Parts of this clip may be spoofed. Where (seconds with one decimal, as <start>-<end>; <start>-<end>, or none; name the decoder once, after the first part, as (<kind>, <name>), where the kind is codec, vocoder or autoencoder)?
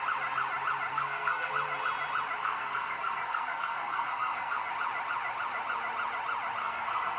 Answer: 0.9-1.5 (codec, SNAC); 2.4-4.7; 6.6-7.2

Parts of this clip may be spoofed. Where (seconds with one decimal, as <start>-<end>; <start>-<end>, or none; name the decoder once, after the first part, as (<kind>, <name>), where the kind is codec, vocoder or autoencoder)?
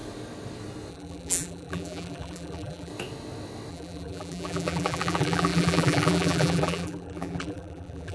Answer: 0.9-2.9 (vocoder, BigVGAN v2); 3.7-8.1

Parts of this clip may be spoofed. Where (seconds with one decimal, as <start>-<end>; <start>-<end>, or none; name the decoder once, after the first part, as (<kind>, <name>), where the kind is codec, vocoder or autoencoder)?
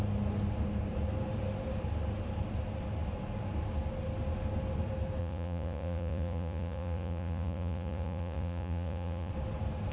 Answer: 5.2-9.3 (vocoder, Vocos)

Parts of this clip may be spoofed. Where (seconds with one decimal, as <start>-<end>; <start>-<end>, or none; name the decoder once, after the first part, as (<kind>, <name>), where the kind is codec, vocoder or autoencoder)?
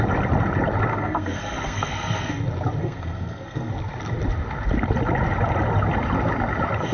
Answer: 0.9-2.3 (codec, SNAC); 2.8-3.7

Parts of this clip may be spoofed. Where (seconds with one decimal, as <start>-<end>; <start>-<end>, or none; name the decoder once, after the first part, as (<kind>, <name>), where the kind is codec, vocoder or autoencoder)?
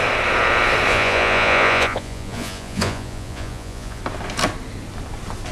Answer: 0.9-4.0 (vocoder, Vocos)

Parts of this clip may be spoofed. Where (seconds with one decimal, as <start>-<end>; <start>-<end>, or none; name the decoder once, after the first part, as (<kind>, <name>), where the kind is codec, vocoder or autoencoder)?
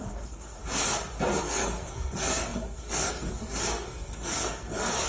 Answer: 0.0-0.6 (codec, SNAC); 1.4-5.1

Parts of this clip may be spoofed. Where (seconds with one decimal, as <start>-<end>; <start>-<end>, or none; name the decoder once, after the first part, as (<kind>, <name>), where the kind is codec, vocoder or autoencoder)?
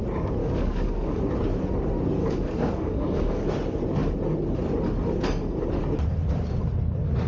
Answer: 0.4-1.2 (codec, DAC); 2.2-3.5